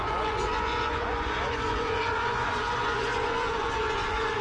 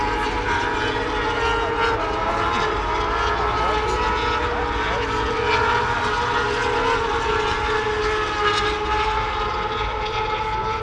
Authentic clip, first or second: second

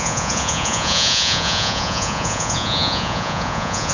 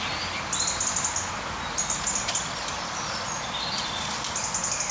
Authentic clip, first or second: second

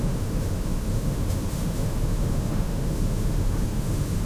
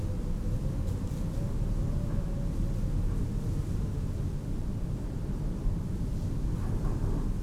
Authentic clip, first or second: second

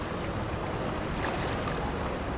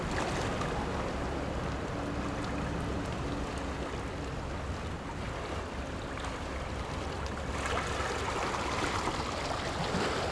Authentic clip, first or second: second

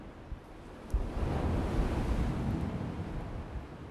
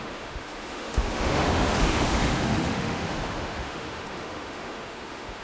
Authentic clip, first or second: first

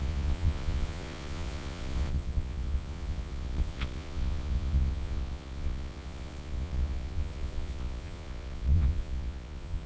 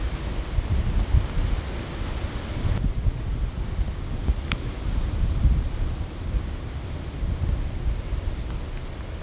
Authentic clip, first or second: second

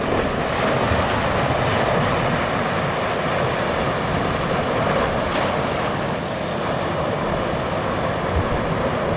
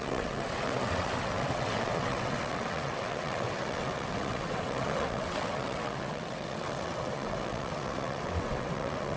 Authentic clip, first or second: first